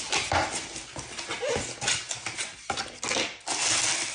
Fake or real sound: real